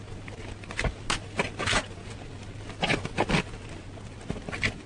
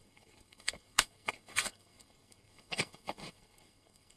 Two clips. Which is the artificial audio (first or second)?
second